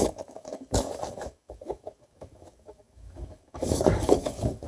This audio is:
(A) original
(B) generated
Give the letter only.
B